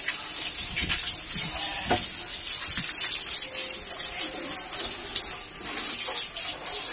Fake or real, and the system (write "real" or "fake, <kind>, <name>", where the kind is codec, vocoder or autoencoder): real